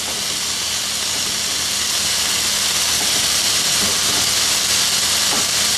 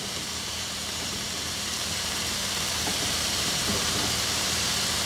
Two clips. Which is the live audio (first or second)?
first